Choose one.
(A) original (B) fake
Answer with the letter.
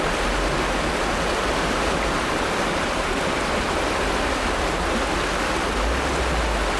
A